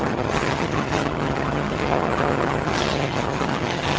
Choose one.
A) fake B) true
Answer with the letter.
A